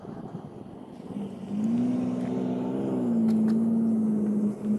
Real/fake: real